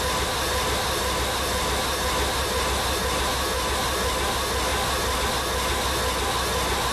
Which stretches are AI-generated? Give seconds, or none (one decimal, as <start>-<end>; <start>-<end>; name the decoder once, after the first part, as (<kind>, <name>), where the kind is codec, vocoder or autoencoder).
none